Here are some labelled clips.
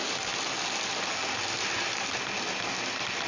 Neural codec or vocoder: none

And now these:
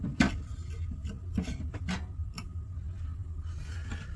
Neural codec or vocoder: none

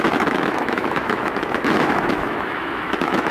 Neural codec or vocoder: autoencoder, DAC-VAE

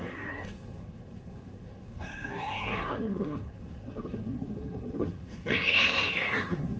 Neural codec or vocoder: codec, SNAC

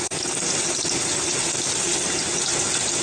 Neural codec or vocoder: none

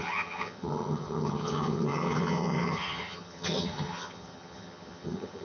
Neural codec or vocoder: vocoder, HiFi-GAN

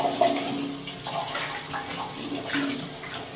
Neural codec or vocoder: none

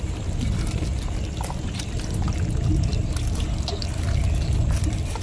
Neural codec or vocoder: none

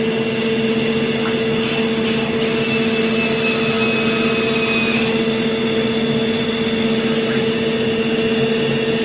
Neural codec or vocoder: none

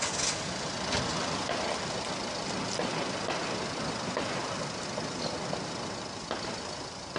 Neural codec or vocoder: none